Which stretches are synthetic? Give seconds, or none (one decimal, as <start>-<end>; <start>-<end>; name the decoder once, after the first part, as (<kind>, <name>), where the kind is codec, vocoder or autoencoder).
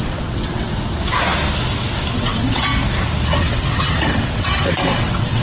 0.0-0.7 (vocoder, WaveNeXt); 2.1-2.7; 3.4-5.4